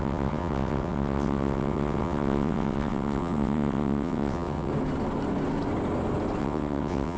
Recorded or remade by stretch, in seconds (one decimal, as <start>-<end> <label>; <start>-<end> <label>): 0.0-4.7 remade; 4.7-6.4 recorded; 6.4-7.2 remade